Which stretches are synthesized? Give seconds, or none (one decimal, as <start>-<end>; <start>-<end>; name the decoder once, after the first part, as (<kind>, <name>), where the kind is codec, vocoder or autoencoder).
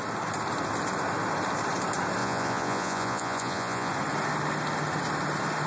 2.2-3.9 (vocoder, Vocos)